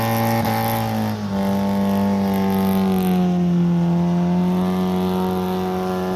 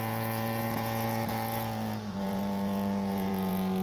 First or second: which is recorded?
first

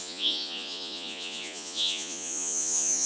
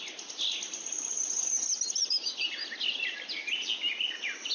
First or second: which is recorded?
second